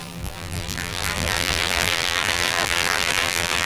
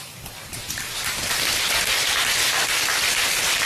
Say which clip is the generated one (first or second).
first